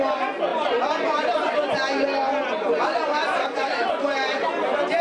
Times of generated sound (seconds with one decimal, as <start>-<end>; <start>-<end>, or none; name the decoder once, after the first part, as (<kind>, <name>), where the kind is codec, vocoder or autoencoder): 0.5-1.7 (vocoder, BigVGAN v2); 3.1-4.5